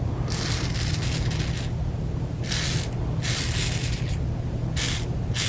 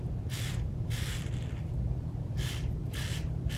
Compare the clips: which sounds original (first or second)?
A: first